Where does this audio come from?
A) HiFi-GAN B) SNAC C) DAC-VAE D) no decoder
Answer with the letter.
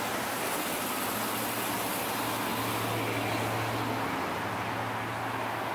D